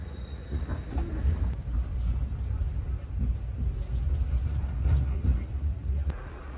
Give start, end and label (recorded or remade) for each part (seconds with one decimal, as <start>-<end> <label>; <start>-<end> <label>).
0.0-0.7 remade; 0.7-4.5 recorded; 4.5-6.6 remade